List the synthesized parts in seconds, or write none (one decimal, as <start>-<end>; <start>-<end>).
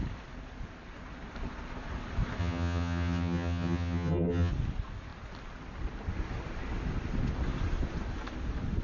2.4-4.5